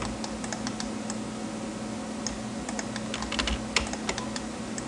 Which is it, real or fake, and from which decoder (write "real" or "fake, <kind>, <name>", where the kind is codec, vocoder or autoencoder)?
real